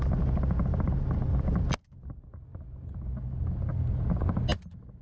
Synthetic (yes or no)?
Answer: no